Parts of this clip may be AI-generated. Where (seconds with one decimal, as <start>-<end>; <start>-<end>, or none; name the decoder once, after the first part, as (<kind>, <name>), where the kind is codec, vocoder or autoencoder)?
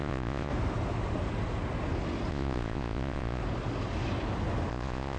0.0-0.5 (vocoder, Vocos); 2.3-3.4; 4.7-5.2